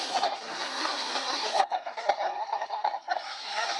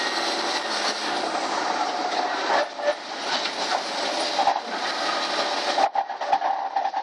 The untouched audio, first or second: second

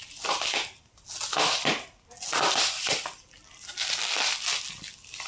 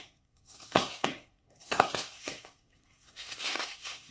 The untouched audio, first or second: first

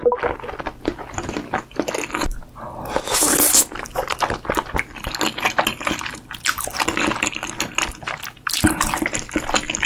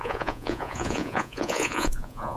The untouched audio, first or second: first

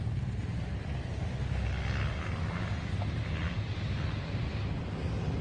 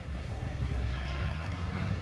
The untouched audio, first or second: first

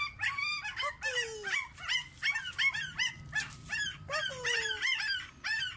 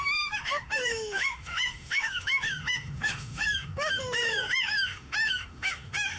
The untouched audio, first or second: first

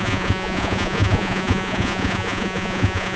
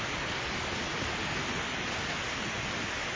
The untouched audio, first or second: second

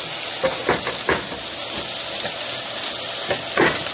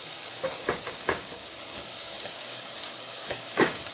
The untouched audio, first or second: first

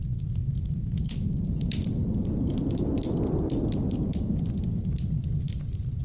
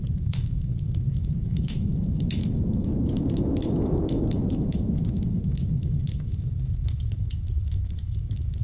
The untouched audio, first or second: first